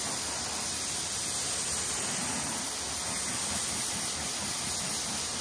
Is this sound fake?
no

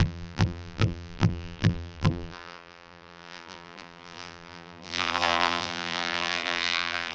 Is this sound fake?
yes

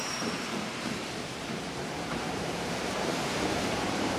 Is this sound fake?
yes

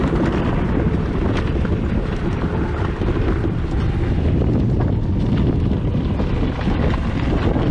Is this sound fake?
no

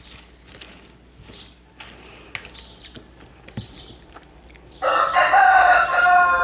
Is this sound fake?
no